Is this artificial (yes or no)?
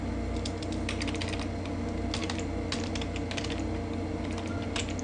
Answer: no